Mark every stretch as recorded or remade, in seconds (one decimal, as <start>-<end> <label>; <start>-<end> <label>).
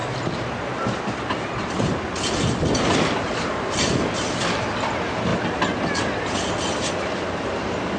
0.0-8.0 recorded